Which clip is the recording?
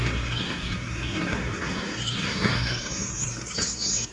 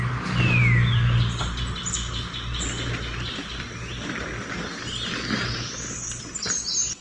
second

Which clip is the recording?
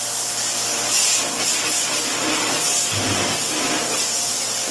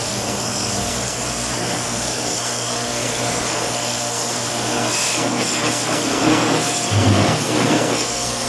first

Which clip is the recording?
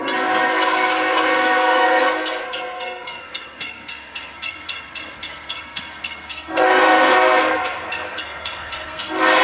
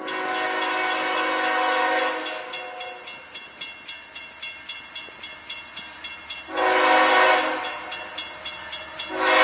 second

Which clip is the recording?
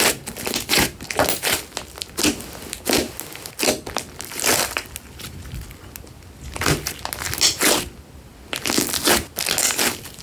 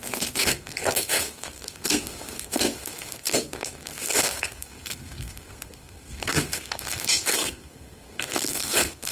first